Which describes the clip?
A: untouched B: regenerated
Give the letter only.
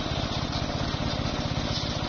A